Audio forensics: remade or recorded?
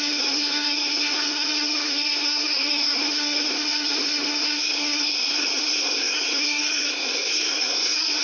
remade